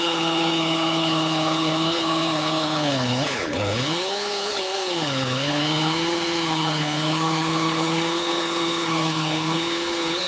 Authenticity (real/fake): fake